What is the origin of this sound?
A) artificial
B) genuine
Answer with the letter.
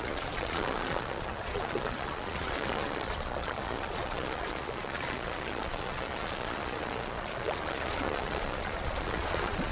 A